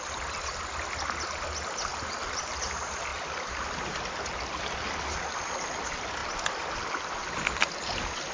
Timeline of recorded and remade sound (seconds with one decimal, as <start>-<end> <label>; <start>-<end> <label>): 0.0-8.3 recorded